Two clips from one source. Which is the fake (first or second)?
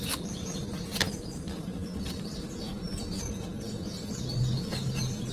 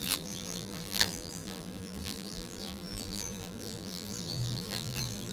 second